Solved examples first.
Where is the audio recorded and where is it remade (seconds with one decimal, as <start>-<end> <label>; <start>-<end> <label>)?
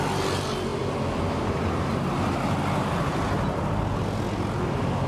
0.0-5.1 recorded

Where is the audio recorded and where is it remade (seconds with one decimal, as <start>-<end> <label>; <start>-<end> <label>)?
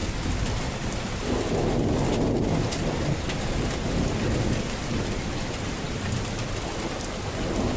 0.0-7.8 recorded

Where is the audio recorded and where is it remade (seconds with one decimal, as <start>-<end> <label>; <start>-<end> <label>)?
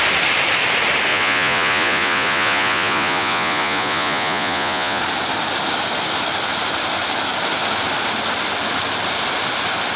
0.0-1.1 recorded; 1.1-5.0 remade; 5.0-10.0 recorded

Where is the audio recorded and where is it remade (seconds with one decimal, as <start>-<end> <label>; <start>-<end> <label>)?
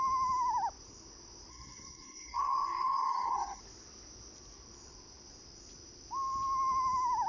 0.0-1.5 recorded; 1.5-3.6 remade; 3.6-7.3 recorded